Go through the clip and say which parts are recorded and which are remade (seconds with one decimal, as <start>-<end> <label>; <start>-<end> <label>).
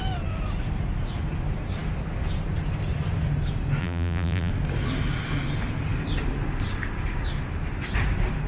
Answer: 0.0-3.8 recorded; 3.8-4.5 remade; 4.5-8.5 recorded